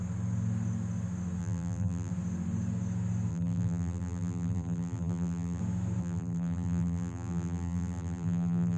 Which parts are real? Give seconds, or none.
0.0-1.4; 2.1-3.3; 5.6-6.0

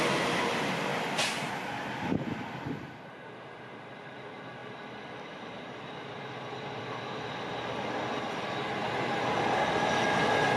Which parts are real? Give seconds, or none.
0.0-0.9; 1.5-4.6; 6.8-8.8

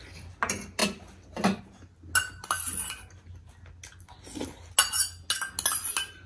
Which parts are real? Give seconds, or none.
0.0-0.8; 1.6-6.3

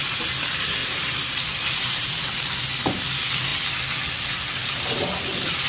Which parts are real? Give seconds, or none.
0.0-0.8; 2.6-4.6; 5.2-5.7

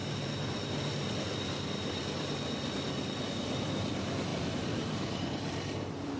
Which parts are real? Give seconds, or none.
0.0-3.3

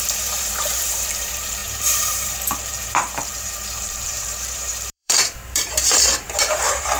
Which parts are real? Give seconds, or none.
none